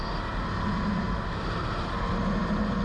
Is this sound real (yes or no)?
yes